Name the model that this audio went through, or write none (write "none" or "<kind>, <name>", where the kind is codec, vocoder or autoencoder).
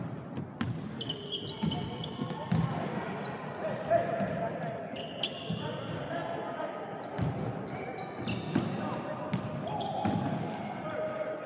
none